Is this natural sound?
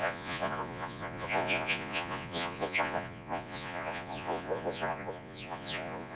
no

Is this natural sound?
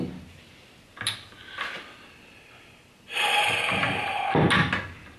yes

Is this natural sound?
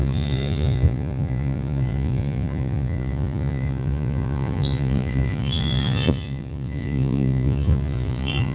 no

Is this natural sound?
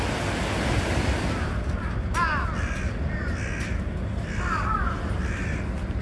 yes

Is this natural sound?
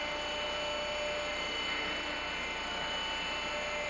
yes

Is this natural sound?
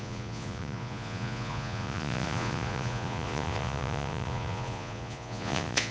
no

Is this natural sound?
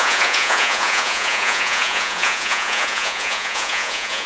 no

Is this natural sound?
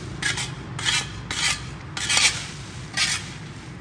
yes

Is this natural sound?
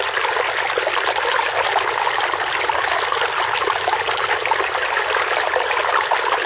yes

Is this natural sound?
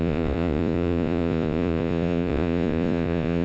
no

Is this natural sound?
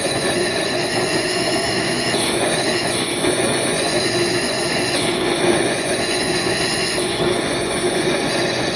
no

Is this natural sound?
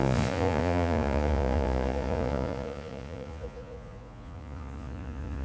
no